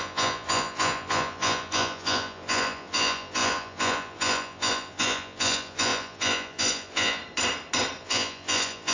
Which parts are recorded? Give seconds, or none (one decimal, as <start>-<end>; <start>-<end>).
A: 7.2-8.0